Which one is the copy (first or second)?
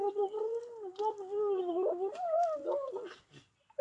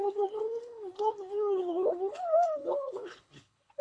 second